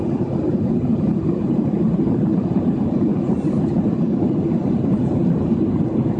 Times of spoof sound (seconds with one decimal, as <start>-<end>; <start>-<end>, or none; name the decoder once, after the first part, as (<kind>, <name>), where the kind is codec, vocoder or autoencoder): 0.9-4.1 (vocoder, BigVGAN v2)